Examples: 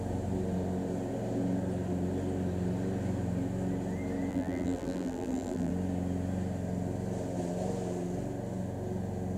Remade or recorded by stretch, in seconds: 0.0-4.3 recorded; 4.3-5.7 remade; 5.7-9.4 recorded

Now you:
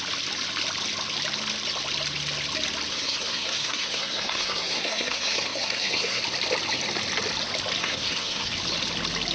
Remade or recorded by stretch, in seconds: 0.0-2.9 recorded; 2.9-6.2 remade; 6.2-7.8 recorded; 7.8-8.5 remade; 8.5-9.3 recorded

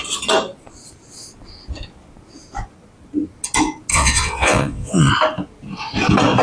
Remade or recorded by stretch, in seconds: 0.0-3.9 recorded; 3.9-5.1 remade; 5.1-6.4 recorded

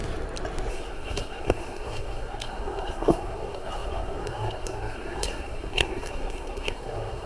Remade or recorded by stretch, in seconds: 0.0-0.7 recorded; 0.7-7.3 remade